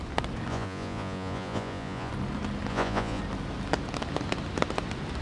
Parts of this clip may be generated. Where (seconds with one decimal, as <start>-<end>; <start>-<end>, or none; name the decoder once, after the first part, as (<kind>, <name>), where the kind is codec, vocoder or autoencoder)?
0.5-2.1 (vocoder, Vocos); 2.7-3.2